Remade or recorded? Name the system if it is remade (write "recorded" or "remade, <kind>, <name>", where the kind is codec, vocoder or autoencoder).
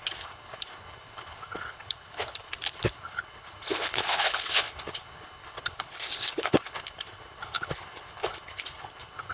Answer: remade, codec, HILCodec